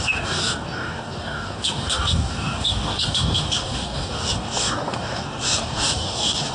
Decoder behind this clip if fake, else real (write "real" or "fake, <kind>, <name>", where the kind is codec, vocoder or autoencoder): fake, codec, DAC